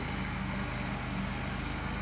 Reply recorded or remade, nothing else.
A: recorded